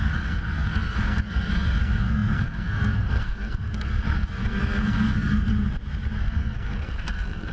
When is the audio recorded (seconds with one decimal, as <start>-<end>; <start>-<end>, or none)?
5.5-6.2